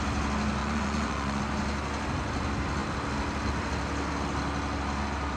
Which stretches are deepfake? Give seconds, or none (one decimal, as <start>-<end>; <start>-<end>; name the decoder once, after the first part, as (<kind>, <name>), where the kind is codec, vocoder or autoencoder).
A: 0.6-1.4 (vocoder, Vocos)